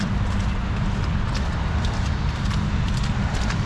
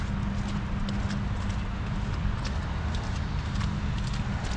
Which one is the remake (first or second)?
first